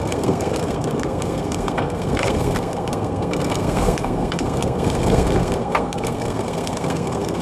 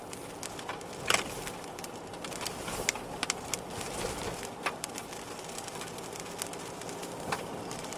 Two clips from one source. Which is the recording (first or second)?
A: second